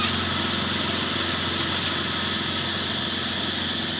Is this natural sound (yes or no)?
yes